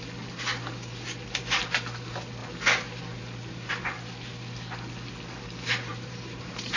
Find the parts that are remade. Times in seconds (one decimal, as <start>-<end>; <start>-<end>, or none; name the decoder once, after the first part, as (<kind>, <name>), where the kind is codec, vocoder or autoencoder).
5.9-6.8 (vocoder, BigVGAN v2)